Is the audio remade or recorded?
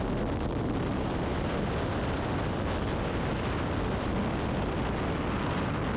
recorded